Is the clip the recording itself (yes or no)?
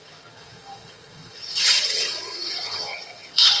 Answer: no